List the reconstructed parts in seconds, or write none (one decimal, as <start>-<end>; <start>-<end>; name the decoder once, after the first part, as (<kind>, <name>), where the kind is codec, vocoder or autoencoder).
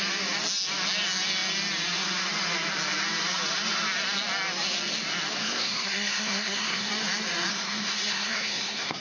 5.4-6.9 (codec, SNAC); 7.5-9.0